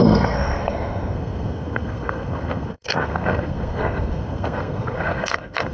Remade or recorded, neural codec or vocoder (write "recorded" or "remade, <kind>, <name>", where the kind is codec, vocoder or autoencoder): remade, codec, SNAC